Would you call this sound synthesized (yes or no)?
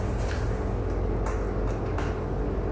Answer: no